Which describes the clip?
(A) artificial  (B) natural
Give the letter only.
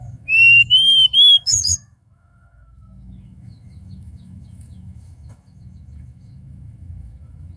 A